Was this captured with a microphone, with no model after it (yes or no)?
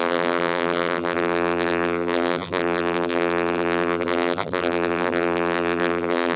no